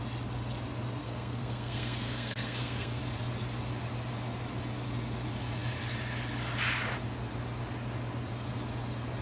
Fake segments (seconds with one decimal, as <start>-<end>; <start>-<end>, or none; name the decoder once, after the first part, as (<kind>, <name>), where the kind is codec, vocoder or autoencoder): 1.0-3.0 (codec, SNAC)